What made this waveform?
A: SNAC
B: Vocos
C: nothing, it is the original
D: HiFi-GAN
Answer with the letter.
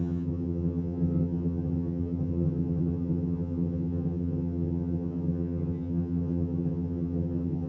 D